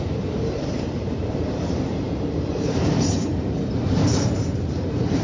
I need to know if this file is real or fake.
fake